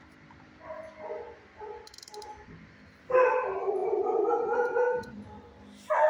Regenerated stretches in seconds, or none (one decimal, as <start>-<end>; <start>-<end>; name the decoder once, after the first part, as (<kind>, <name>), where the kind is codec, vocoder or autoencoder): 3.8-5.1 (vocoder, Vocos)